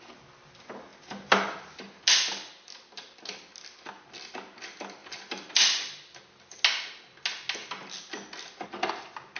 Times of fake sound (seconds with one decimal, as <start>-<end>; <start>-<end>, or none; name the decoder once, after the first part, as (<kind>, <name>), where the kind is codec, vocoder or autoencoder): 5.0-6.2 (vocoder, BigVGAN v2)